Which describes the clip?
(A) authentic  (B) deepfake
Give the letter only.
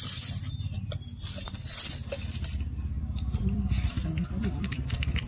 B